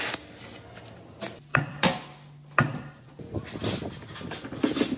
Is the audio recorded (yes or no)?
yes